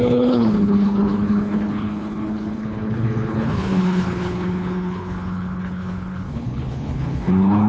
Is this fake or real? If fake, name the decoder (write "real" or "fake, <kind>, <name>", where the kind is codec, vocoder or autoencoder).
fake, codec, HILCodec